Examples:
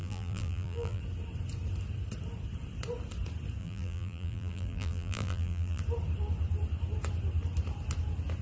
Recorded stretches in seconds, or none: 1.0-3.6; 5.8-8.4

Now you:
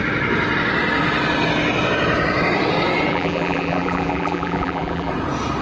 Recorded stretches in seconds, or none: 0.0-3.1; 5.1-5.6

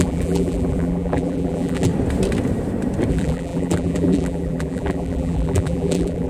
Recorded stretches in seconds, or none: 1.9-3.1

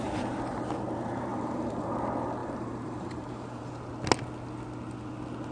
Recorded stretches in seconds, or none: 0.0-1.3; 1.9-2.4; 3.7-5.5

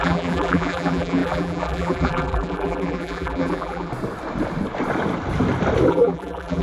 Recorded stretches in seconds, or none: 3.9-5.9

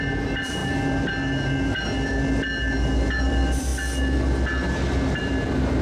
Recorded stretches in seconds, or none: 0.6-3.2; 3.7-5.2

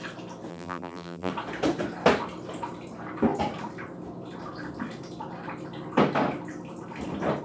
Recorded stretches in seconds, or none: 0.0-0.5; 1.3-7.4

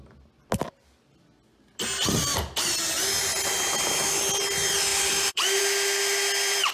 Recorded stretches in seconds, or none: 0.0-4.9; 5.6-6.7